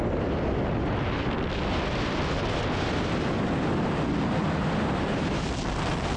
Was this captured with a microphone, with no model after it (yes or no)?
yes